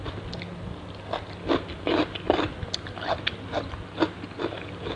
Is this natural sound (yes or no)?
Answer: yes